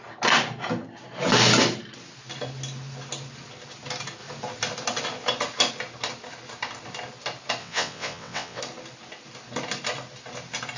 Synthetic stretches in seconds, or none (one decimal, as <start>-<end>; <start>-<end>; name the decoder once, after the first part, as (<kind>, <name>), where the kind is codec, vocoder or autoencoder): 7.6-8.6 (vocoder, WaveNeXt)